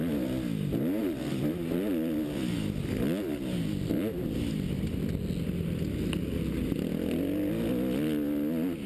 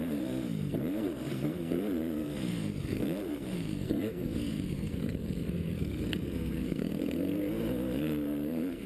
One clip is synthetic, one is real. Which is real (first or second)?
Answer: first